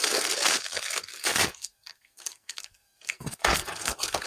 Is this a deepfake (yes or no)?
yes